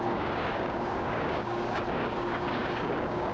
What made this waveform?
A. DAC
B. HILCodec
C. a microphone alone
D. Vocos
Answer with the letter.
A